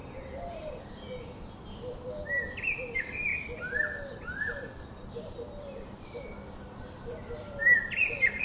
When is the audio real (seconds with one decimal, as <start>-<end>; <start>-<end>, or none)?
0.0-0.8